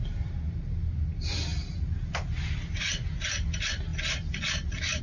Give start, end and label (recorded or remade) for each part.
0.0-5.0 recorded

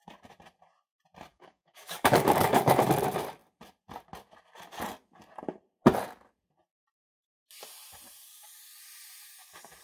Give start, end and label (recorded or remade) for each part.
0.0-1.3 recorded; 1.3-2.9 remade; 2.9-9.8 recorded

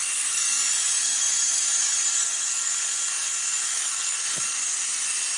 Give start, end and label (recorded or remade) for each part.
0.0-2.7 remade; 2.7-3.7 recorded; 3.7-4.3 remade; 4.3-5.4 recorded

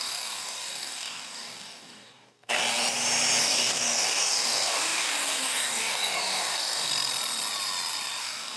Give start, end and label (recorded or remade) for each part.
0.0-2.6 remade; 2.6-3.4 recorded; 3.4-6.9 remade; 6.9-8.2 recorded; 8.2-8.6 remade

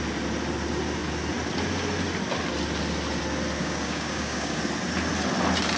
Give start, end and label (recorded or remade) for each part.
0.0-3.6 recorded; 3.6-4.6 remade; 4.6-5.8 recorded